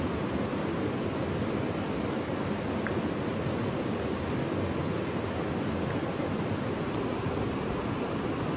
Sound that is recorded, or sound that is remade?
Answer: recorded